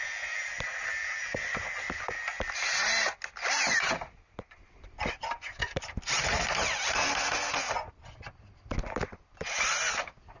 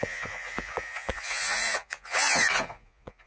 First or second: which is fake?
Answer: second